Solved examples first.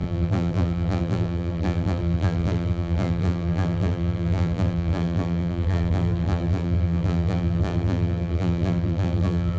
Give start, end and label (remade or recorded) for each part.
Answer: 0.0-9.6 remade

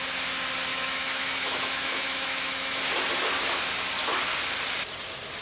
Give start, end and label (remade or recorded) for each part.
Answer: 0.0-0.7 recorded; 0.7-2.8 remade; 2.8-5.4 recorded

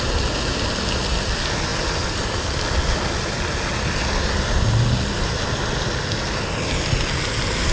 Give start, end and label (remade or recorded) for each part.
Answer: 0.0-7.7 recorded